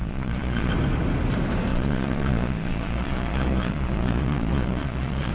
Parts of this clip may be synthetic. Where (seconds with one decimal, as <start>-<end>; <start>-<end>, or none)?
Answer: 0.0-0.7; 1.7-5.3